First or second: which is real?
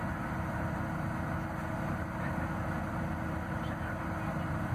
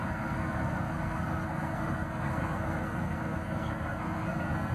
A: first